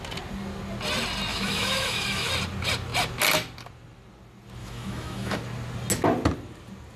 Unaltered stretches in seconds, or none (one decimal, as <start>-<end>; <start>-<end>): 0.0-1.3; 2.3-4.6; 5.4-7.0